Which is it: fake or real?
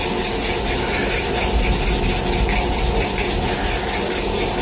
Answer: real